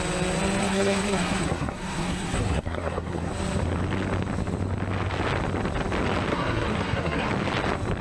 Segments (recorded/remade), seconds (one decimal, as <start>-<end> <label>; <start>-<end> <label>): 0.0-0.6 recorded; 0.6-3.3 remade; 3.3-6.3 recorded; 6.3-7.3 remade; 7.3-8.0 recorded